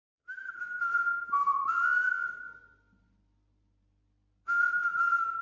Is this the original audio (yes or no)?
yes